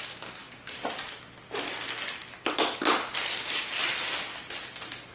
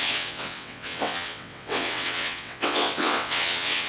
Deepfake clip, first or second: second